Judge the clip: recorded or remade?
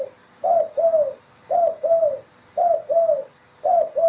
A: recorded